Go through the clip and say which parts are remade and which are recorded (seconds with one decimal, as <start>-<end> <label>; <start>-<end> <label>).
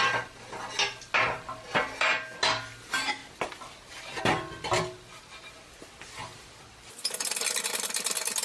0.0-8.4 recorded